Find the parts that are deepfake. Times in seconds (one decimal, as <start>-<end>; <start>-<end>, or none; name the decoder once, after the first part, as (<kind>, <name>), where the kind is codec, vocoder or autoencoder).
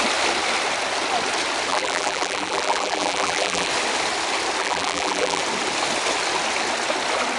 1.7-3.7 (vocoder, BigVGAN v2); 4.6-5.4